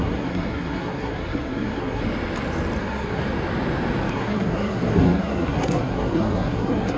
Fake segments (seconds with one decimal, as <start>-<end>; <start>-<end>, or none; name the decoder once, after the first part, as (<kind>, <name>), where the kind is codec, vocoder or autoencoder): 0.0-2.0 (codec, SNAC); 2.8-3.2; 4.1-7.0